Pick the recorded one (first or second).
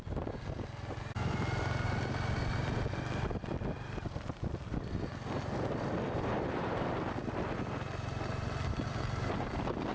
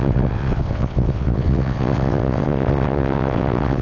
first